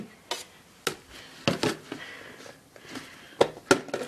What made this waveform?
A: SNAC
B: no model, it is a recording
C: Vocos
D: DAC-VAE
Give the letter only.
B